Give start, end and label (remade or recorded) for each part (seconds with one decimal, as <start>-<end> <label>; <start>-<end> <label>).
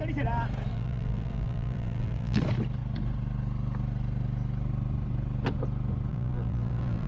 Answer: 0.0-0.7 recorded; 0.7-2.4 remade; 2.4-6.1 recorded; 6.1-7.1 remade